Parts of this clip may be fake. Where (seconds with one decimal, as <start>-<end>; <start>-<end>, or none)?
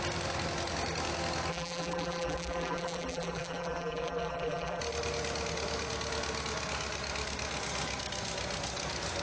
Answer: 1.5-4.8